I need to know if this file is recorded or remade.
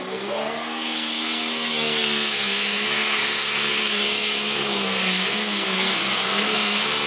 remade